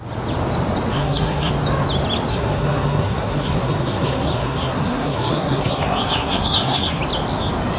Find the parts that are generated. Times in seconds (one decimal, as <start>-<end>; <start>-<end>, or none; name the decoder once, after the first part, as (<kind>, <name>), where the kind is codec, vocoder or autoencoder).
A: 0.9-1.5 (codec, SNAC); 2.3-7.0